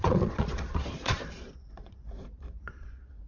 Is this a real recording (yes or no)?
no